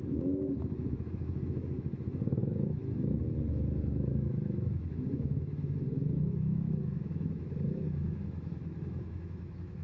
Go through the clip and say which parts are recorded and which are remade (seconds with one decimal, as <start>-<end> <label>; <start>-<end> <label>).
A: 0.0-9.8 remade